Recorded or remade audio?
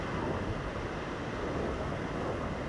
recorded